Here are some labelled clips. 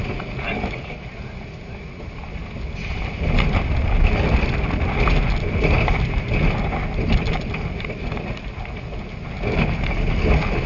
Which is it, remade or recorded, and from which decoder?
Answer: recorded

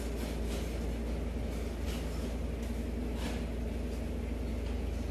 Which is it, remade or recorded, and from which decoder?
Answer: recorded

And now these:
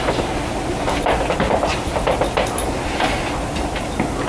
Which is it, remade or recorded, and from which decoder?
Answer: recorded